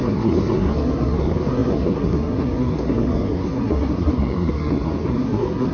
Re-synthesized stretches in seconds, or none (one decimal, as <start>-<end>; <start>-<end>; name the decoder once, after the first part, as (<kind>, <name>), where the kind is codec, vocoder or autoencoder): 0.0-5.7 (codec, SNAC)